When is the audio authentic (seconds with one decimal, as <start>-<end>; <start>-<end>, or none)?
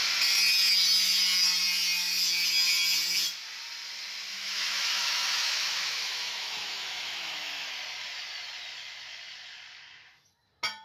0.0-4.3; 7.7-10.8